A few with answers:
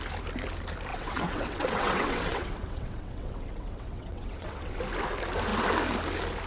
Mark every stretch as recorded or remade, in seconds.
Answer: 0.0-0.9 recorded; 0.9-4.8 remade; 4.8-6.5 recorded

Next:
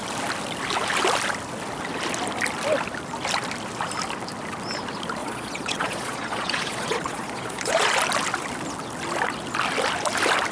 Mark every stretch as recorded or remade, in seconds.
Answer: 0.0-5.2 recorded; 5.2-7.9 remade; 7.9-10.5 recorded

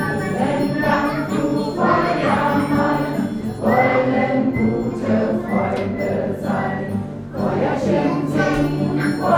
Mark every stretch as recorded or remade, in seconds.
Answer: 0.0-5.7 recorded; 5.7-6.4 remade; 6.4-9.4 recorded

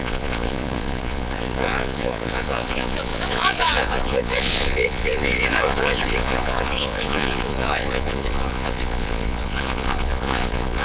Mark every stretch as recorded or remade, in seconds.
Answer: 0.0-10.8 remade

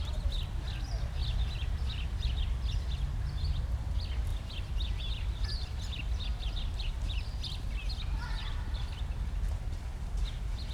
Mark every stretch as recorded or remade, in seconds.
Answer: 0.0-1.2 recorded; 1.2-2.4 remade; 2.4-4.3 recorded; 4.3-9.0 remade; 9.0-10.7 recorded